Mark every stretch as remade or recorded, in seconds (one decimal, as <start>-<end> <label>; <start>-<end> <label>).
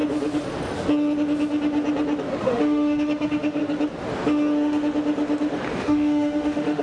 0.0-2.4 recorded; 2.4-3.6 remade; 3.6-5.8 recorded; 5.8-6.8 remade